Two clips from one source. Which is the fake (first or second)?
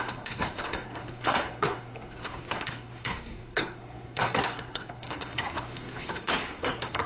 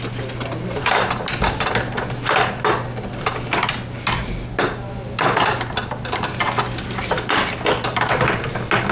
first